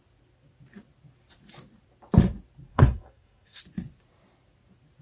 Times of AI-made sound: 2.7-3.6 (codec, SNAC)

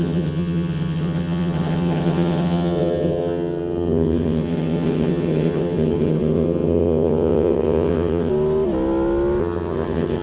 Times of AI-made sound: 0.0-8.3 (vocoder, HiFi-GAN); 9.4-10.2

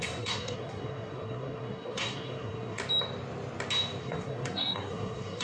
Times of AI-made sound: 0.0-2.8 (codec, SNAC); 4.0-5.4

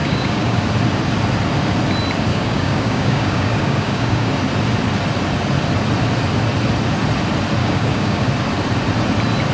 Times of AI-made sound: 0.0-0.6 (codec, DAC); 2.3-4.3; 7.6-8.3

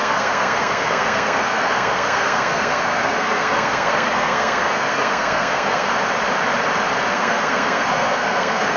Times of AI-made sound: 0.0-5.9 (codec, SNAC); 7.1-8.8